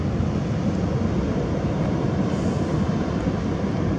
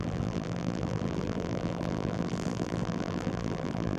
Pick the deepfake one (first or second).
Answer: second